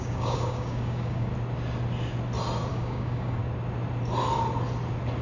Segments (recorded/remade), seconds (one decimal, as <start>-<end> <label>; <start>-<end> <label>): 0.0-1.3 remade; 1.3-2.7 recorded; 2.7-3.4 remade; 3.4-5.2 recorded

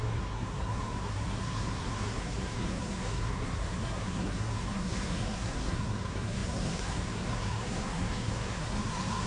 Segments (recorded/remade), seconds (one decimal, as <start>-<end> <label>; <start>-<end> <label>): 0.0-9.3 remade

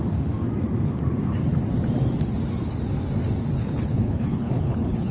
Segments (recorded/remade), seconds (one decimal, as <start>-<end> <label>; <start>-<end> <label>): 0.0-3.6 recorded; 3.6-5.1 remade